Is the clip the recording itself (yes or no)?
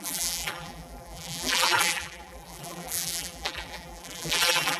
no